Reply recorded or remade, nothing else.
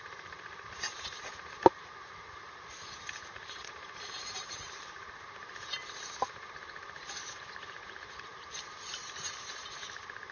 remade